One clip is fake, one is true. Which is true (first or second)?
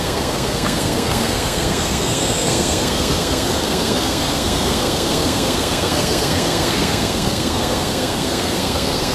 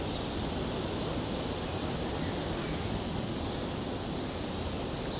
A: second